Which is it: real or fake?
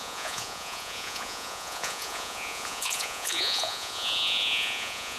fake